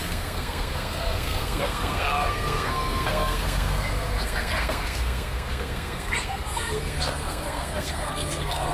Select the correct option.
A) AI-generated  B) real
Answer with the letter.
A